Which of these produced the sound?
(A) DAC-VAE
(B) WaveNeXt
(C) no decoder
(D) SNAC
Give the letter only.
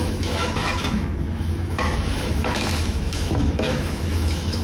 A